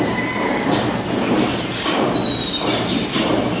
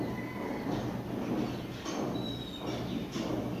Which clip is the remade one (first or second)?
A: first